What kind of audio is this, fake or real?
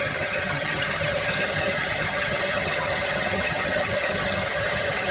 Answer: fake